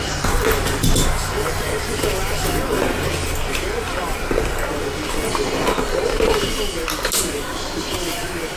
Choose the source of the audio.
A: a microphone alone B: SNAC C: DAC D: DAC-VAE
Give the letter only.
A